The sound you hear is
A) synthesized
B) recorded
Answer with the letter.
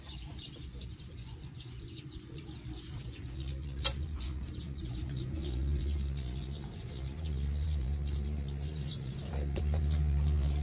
A